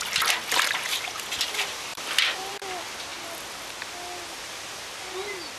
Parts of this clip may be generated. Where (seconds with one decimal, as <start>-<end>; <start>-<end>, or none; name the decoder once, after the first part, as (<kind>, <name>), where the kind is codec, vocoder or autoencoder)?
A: 1.9-2.5 (vocoder, BigVGAN v2)